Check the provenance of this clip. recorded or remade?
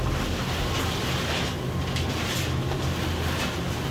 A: recorded